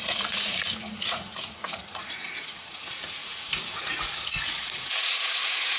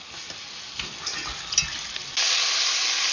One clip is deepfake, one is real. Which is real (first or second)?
second